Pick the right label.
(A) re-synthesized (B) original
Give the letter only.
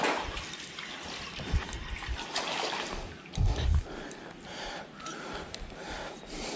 B